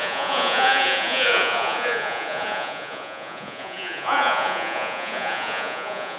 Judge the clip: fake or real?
fake